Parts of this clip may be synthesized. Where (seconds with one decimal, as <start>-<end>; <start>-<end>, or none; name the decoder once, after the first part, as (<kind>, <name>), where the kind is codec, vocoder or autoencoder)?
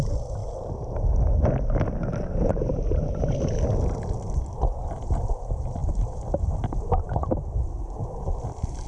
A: none